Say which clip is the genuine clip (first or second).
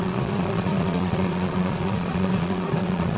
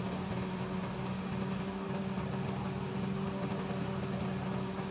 second